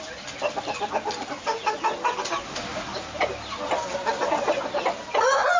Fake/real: real